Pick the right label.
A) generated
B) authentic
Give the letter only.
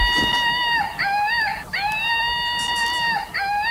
B